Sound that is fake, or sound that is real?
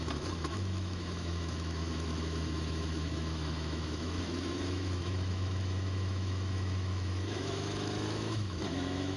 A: fake